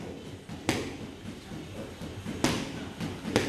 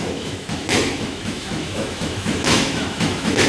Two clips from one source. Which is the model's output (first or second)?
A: second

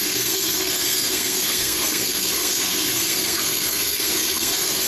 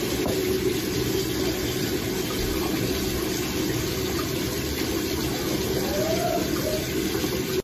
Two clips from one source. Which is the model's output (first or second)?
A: first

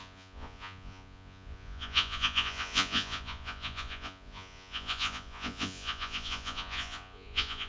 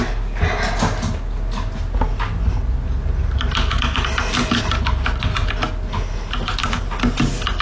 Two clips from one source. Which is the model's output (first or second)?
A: first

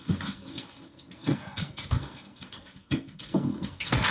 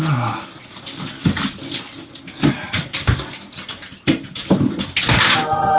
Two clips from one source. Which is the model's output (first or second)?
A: first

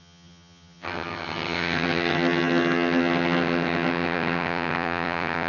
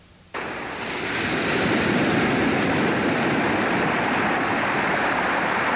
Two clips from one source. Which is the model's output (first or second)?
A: first